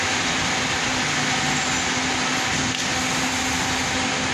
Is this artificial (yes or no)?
no